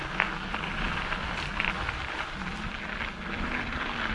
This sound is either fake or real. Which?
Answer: real